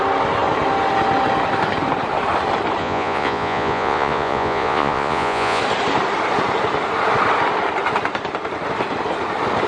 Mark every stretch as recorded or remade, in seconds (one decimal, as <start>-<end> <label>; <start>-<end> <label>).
0.0-2.8 recorded; 2.8-5.6 remade; 5.6-9.7 recorded